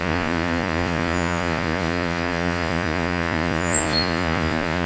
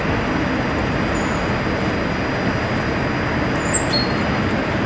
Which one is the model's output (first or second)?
first